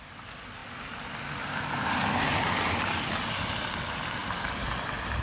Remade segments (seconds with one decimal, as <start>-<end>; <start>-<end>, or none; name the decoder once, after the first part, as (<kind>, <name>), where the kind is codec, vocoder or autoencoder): none